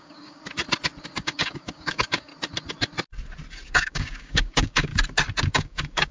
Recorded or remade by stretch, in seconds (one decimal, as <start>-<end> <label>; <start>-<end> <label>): 0.0-0.4 remade; 0.4-1.2 recorded; 1.2-2.3 remade; 2.3-3.7 recorded; 3.7-4.9 remade; 4.9-5.5 recorded; 5.5-6.1 remade